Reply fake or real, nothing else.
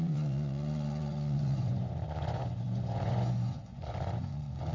fake